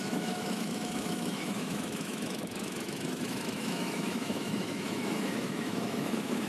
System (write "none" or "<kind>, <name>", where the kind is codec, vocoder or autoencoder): autoencoder, DAC-VAE